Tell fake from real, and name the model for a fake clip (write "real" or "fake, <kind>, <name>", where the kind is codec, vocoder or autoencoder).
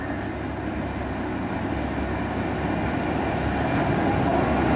real